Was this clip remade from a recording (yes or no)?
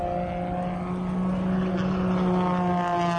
no